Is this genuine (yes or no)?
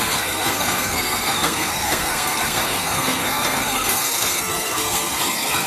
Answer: no